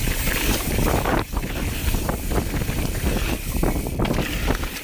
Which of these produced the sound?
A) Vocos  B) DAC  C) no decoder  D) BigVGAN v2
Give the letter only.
C